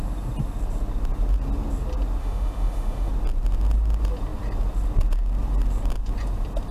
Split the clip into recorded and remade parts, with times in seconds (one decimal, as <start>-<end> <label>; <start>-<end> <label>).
0.0-2.2 recorded; 2.2-3.1 remade; 3.1-6.7 recorded